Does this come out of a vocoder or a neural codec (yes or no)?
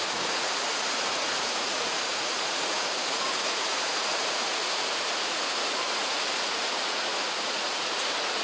yes